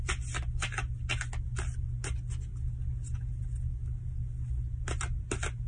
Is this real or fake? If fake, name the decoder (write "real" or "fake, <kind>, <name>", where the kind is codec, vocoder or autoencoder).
real